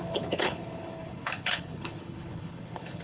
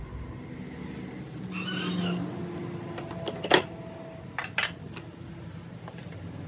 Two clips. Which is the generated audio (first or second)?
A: first